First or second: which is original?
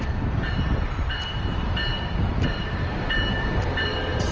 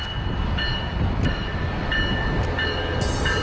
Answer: second